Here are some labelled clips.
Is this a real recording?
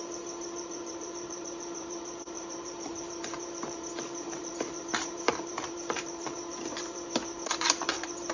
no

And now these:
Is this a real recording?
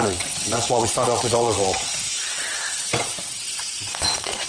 no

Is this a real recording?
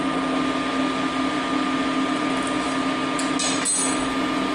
yes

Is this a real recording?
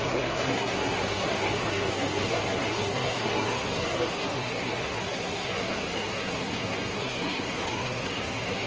no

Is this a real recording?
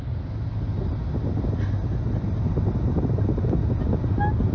yes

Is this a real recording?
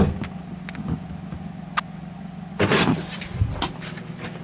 yes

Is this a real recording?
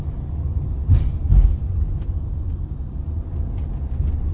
yes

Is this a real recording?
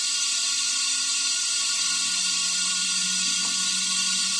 yes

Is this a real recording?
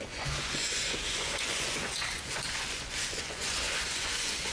no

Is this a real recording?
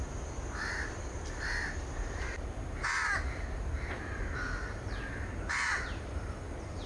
no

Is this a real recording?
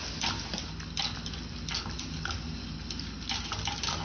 yes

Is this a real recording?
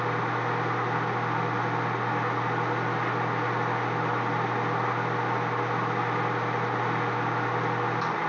yes